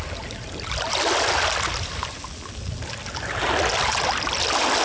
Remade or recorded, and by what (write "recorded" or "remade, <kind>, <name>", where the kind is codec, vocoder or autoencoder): recorded